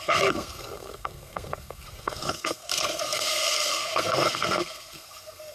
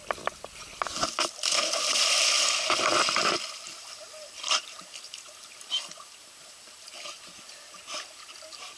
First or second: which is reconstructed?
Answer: first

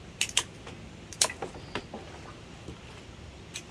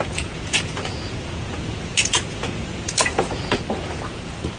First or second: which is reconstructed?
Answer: second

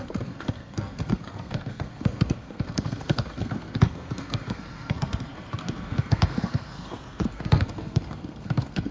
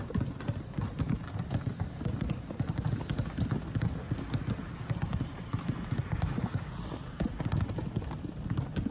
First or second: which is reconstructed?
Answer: first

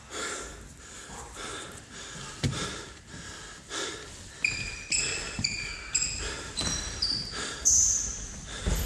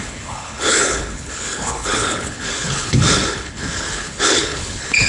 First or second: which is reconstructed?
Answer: second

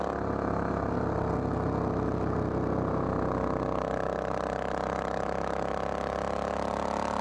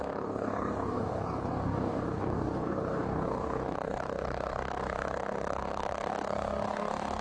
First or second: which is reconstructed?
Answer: second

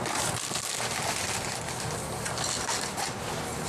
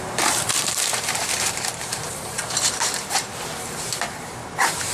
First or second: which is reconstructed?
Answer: second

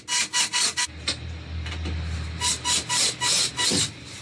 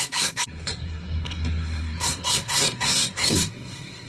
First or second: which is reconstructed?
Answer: second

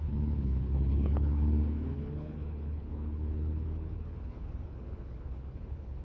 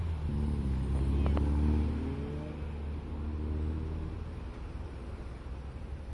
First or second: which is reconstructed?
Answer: first